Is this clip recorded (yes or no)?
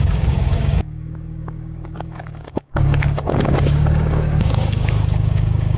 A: no